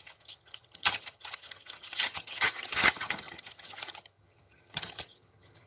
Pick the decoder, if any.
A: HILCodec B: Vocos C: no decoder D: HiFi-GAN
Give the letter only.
D